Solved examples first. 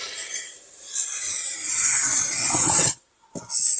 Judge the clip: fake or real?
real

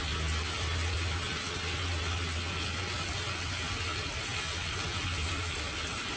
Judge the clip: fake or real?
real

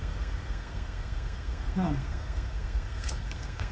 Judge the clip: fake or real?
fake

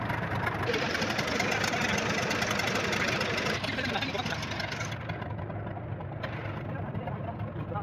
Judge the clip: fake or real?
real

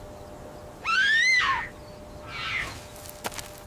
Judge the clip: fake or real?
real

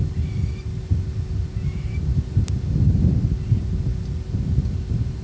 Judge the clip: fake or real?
real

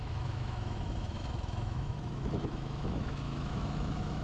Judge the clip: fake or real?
fake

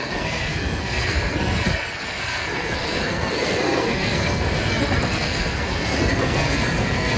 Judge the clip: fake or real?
fake